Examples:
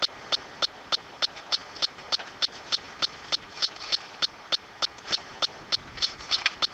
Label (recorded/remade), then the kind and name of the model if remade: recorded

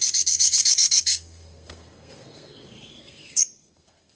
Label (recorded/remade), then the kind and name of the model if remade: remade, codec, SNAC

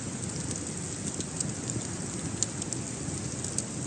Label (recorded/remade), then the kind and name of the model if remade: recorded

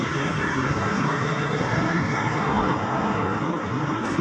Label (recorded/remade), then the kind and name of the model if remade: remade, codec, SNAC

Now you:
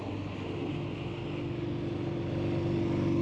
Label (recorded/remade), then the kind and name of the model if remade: recorded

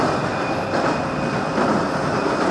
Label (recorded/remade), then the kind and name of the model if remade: recorded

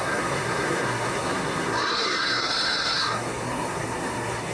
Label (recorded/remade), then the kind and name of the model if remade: remade, codec, SNAC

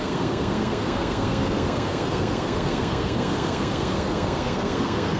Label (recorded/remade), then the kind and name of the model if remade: remade, codec, SNAC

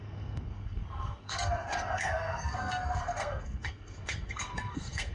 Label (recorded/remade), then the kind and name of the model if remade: remade, codec, SNAC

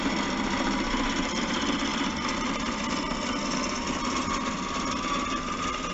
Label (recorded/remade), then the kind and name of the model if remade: recorded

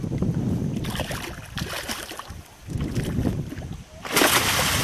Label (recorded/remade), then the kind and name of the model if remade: recorded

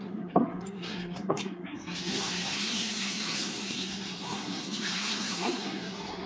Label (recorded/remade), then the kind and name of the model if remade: remade, codec, SNAC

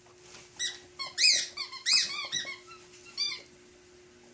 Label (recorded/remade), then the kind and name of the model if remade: recorded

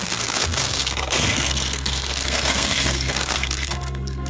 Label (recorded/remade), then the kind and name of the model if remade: remade, codec, SNAC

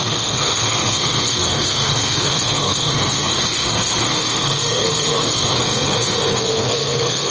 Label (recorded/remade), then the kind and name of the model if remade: remade, codec, SNAC